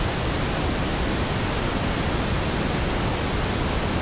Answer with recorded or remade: recorded